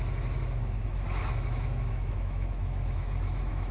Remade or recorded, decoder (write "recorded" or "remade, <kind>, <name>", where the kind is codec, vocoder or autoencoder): remade, autoencoder, DAC-VAE